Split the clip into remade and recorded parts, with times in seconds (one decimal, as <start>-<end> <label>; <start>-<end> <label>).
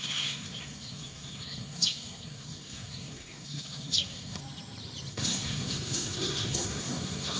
0.0-4.4 remade; 4.4-5.1 recorded; 5.1-7.4 remade